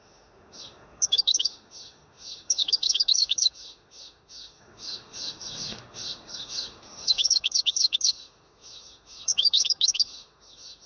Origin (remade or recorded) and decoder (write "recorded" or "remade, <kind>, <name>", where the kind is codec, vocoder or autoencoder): remade, autoencoder, DAC-VAE